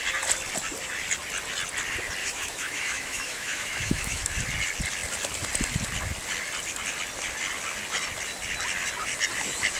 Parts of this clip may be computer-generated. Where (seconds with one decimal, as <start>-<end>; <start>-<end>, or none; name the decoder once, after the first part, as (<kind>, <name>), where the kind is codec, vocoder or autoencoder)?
2.2-4.4 (autoencoder, DAC-VAE)